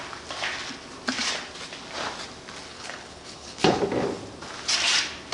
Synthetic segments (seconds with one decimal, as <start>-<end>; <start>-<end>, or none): 2.7-3.8